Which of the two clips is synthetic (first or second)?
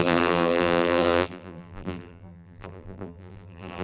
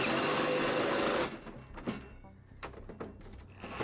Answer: first